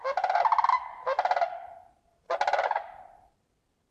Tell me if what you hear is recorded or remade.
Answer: recorded